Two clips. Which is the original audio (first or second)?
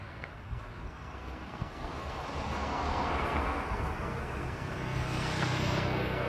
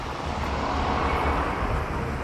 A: second